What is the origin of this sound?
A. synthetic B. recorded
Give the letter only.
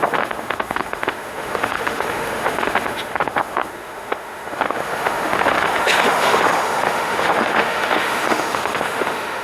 A